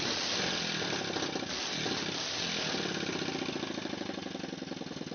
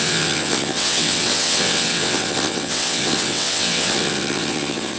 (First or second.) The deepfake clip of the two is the second